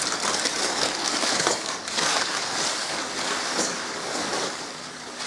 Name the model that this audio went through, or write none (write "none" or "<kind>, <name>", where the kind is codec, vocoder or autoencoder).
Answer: codec, DAC